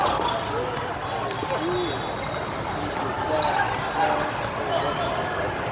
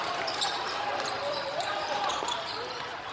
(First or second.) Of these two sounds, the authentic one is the first